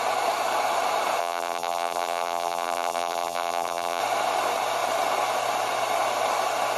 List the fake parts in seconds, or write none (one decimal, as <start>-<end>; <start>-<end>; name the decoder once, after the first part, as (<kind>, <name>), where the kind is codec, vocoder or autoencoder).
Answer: 1.2-4.0 (vocoder, BigVGAN v2)